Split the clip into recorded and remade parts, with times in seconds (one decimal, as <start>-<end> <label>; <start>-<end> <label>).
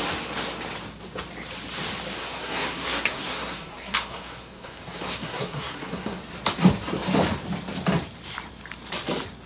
0.0-2.2 recorded; 2.2-6.2 remade; 6.2-9.5 recorded